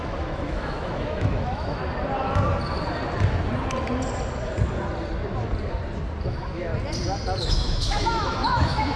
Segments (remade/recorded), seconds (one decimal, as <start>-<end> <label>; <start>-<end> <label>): 0.0-1.8 remade; 1.8-6.3 recorded; 6.3-6.7 remade; 6.7-7.4 recorded; 7.4-9.0 remade

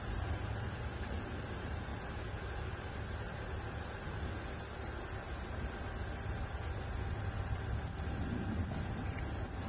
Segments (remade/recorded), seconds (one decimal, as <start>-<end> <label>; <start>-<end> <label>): 0.0-9.7 recorded